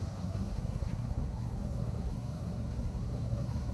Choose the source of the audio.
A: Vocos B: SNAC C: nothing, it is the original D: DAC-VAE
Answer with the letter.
B